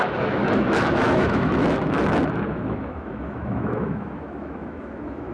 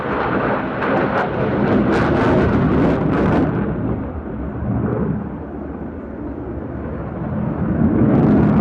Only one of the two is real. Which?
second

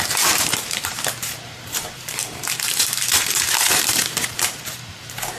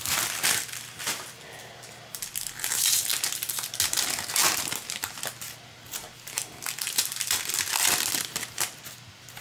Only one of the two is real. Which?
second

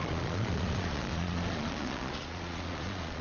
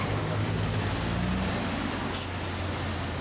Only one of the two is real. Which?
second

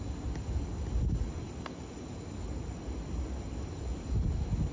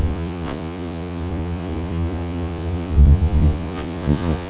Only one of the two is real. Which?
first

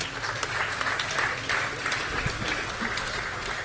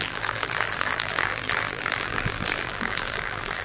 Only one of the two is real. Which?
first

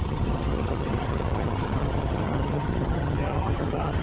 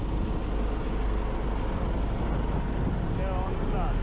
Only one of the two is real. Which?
second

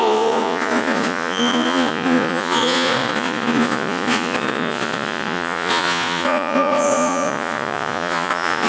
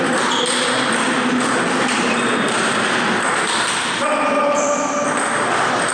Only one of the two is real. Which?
second